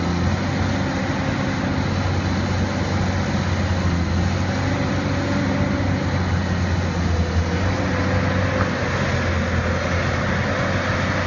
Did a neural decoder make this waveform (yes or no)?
no